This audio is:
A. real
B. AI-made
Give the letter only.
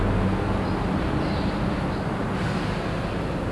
A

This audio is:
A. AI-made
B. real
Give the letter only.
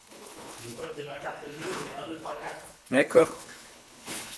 A